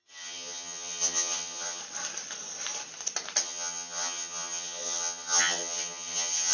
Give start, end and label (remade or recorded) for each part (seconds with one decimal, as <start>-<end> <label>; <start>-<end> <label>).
0.0-1.8 remade; 1.8-3.4 recorded; 3.4-6.5 remade